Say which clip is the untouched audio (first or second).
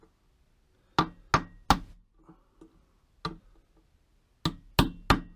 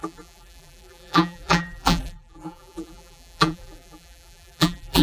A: first